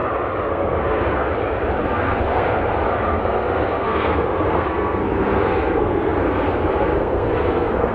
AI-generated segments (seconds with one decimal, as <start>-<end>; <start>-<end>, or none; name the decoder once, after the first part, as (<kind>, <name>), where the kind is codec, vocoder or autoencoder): 0.5-1.3 (codec, SNAC); 1.8-2.6; 3.2-7.9

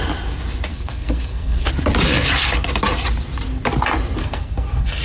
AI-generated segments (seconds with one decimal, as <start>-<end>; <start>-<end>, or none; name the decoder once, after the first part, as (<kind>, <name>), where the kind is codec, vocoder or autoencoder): 0.7-1.7 (codec, SNAC); 4.2-5.0

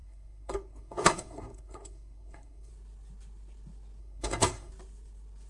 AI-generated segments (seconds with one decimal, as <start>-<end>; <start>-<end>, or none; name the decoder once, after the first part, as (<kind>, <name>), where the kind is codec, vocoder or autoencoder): 0.0-2.7 (codec, SNAC); 4.0-4.7

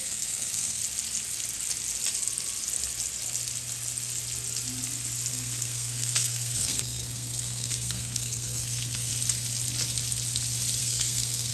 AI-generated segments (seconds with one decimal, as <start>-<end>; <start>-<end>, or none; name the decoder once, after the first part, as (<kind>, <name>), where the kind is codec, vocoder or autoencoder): 0.0-0.8 (codec, SNAC); 5.3-9.1; 10.8-11.5

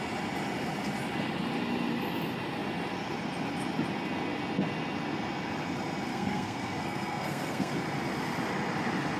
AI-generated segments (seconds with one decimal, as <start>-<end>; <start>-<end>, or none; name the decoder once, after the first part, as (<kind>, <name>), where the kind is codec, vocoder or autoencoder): 6.1-7.7 (codec, SNAC)

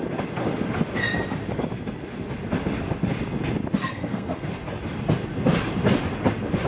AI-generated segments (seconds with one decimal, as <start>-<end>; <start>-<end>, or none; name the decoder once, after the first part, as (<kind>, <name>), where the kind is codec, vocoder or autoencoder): 3.8-4.5 (codec, SNAC)